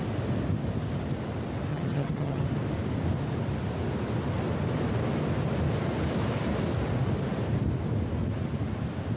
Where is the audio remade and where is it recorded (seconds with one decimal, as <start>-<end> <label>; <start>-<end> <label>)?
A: 0.0-1.7 recorded; 1.7-2.4 remade; 2.4-9.2 recorded